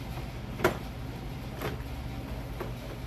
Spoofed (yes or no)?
no